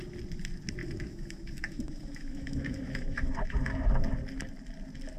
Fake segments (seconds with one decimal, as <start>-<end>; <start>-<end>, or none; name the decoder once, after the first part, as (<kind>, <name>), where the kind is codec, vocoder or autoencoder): 0.8-3.9 (autoencoder, DAC-VAE)